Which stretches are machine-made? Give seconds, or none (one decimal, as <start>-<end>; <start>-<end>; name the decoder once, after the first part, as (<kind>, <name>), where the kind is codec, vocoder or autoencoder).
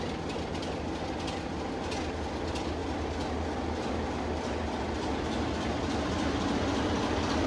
none